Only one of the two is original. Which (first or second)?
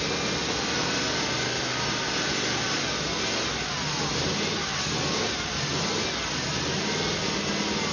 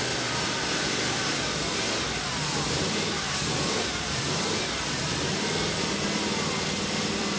first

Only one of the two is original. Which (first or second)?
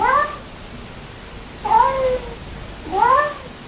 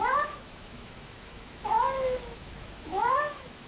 first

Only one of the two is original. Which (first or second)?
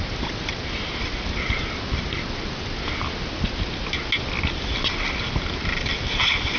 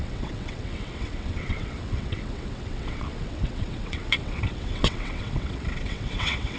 first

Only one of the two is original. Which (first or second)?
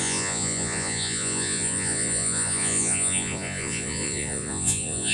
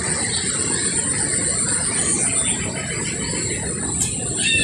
second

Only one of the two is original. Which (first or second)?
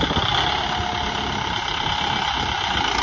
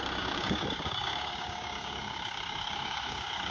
first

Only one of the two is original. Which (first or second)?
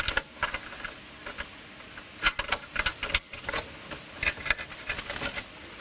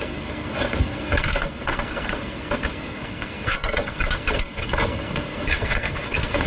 first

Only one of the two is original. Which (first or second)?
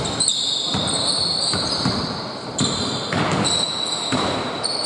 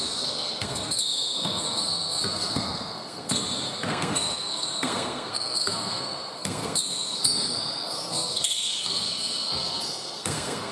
first